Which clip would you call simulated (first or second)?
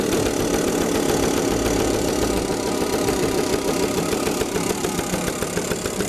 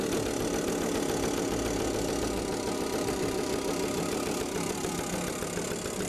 first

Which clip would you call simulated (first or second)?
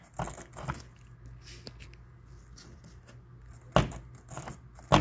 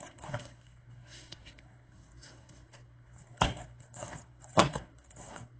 second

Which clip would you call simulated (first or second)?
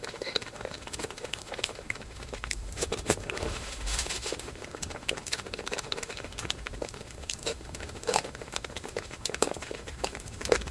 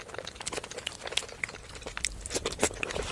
first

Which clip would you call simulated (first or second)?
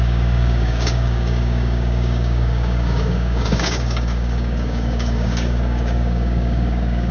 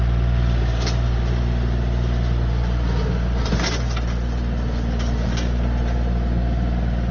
first